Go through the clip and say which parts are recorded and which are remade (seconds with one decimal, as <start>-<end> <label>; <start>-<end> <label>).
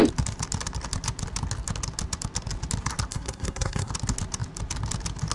0.0-3.1 recorded; 3.1-3.9 remade; 3.9-5.3 recorded